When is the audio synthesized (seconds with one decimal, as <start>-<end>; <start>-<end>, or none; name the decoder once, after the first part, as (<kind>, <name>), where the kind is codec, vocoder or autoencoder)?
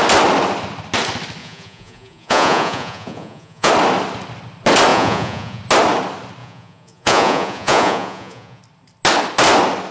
1.4-3.7 (vocoder, Vocos); 4.9-5.6; 6.4-8.6